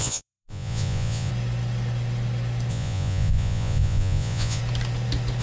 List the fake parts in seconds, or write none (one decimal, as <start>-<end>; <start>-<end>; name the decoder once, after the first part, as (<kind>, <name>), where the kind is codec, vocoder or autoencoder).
0.0-1.3 (vocoder, Vocos); 2.7-4.6